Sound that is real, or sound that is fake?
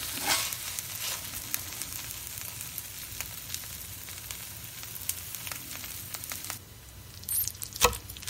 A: real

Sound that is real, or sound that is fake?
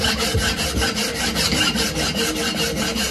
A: fake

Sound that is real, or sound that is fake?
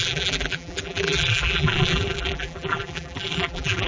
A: fake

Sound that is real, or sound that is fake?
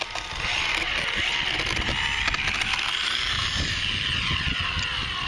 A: real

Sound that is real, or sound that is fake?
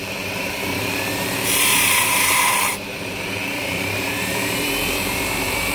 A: fake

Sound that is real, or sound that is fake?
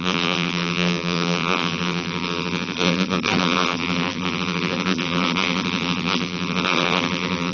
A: fake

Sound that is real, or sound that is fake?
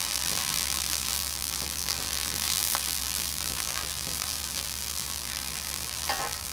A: fake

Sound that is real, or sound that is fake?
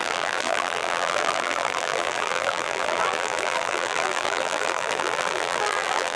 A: fake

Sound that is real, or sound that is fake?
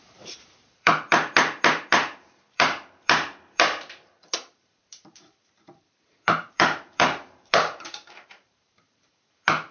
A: fake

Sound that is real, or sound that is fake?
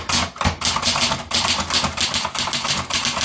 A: real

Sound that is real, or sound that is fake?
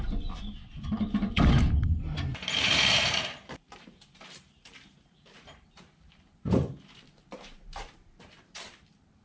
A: fake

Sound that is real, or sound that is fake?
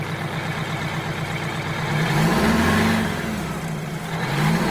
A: real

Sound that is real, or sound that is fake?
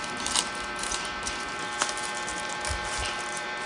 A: fake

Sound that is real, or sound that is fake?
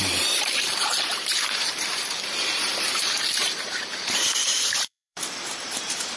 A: fake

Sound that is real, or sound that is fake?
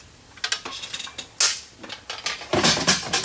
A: real